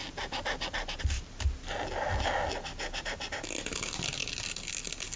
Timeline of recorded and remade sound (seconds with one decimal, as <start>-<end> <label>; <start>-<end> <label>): 0.0-5.2 recorded